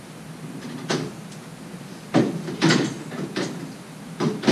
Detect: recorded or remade recorded